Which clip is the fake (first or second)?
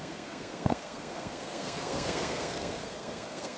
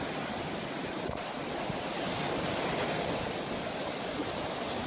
first